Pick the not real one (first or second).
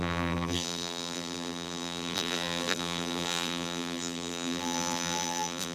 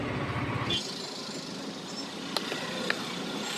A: first